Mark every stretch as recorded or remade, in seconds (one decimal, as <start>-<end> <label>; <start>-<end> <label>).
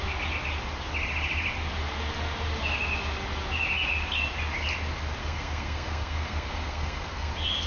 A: 0.0-5.2 recorded; 5.2-7.3 remade; 7.3-7.7 recorded